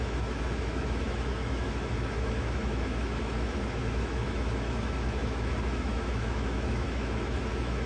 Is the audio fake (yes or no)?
yes